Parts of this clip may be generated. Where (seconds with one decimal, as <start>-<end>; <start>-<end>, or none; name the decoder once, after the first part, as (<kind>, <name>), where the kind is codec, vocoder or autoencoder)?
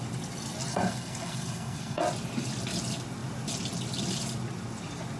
0.7-2.0 (codec, SNAC)